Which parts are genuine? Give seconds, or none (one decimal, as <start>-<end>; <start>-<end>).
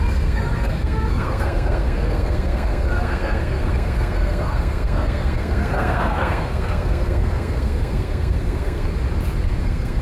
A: 8.9-9.6